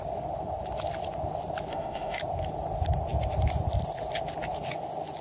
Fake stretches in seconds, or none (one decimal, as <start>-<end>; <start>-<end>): 1.7-2.2